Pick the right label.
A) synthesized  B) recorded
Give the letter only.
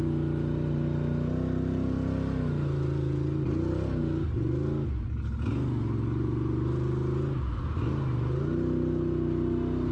B